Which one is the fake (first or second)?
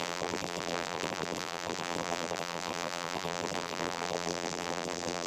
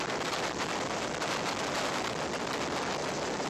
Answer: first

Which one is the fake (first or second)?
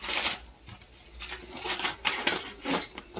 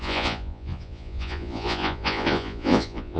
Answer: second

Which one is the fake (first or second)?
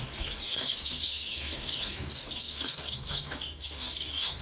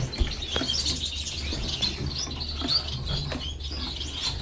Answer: first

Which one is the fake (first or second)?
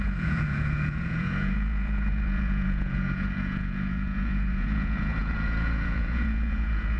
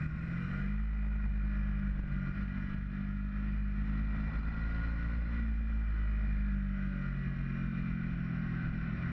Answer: first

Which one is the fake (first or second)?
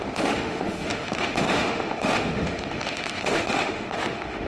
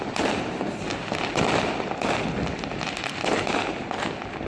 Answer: first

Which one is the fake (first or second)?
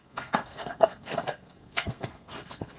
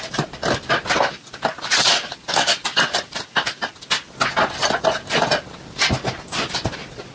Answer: first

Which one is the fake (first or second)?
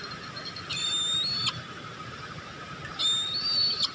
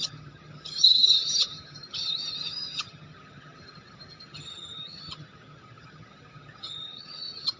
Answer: second